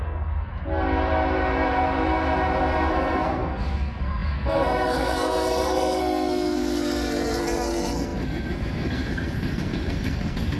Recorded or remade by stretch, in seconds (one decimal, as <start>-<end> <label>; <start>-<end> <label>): 0.0-0.5 remade; 0.5-2.9 recorded; 2.9-10.6 remade